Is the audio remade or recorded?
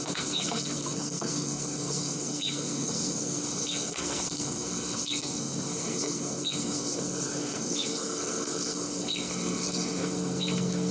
remade